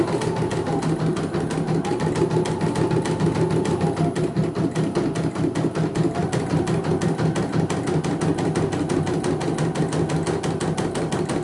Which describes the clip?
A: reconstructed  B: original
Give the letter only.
B